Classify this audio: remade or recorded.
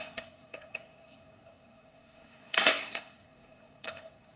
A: remade